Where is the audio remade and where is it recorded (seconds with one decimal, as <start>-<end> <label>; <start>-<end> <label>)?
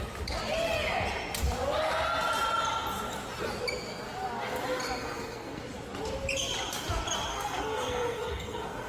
0.0-5.0 recorded; 5.0-5.6 remade; 5.6-7.3 recorded; 7.3-8.9 remade